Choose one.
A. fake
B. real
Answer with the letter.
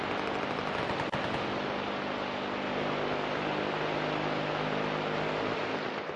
B